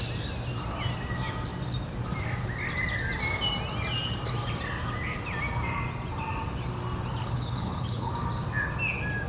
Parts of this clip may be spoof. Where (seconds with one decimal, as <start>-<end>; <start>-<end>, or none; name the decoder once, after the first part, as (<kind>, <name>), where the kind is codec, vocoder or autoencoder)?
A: 7.2-8.1 (codec, HILCodec)